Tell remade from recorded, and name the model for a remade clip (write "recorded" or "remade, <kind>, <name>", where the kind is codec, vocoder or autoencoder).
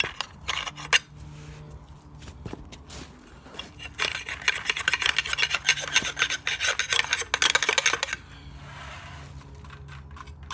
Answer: recorded